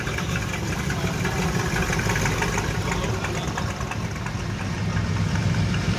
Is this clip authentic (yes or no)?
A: yes